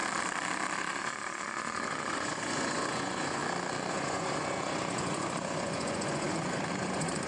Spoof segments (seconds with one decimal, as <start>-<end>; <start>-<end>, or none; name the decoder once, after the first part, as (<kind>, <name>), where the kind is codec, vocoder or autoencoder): 0.9-3.4 (vocoder, Vocos); 3.9-7.3